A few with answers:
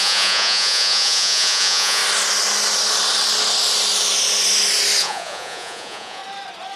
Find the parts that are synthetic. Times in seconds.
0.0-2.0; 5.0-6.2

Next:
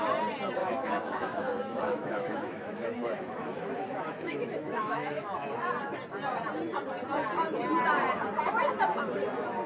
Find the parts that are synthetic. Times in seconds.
0.6-5.7

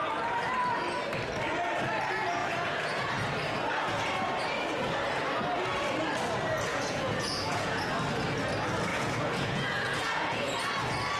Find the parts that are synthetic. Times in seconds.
2.4-3.1; 6.7-7.8; 8.9-10.6

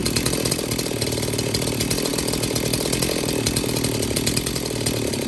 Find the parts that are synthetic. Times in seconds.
0.5-2.1

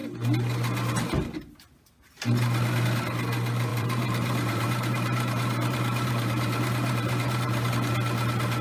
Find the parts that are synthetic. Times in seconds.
3.7-7.7

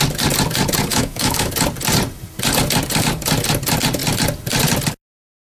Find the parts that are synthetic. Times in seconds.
0.9-1.5